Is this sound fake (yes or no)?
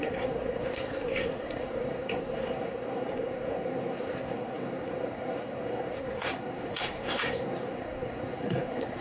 yes